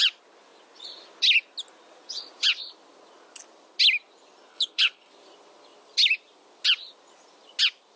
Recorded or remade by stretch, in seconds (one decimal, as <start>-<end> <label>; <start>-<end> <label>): 0.0-4.5 recorded; 4.5-5.1 remade; 5.1-8.0 recorded